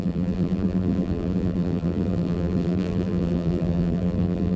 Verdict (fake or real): fake